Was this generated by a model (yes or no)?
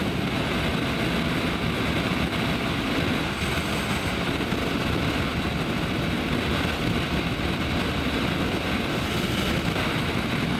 no